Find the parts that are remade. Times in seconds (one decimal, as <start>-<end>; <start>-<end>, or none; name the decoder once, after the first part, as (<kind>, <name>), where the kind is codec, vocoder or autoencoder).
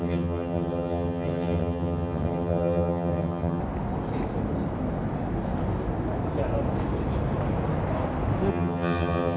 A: 0.0-3.6 (vocoder, HiFi-GAN); 8.5-9.4